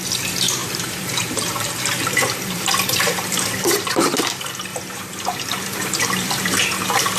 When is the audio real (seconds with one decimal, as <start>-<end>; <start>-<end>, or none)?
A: 0.0-0.6; 4.3-4.7; 6.6-7.2